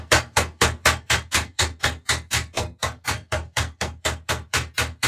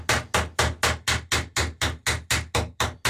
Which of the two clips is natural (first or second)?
second